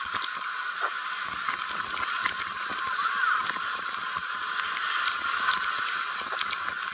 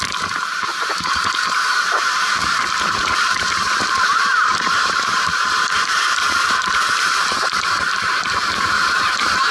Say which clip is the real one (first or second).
first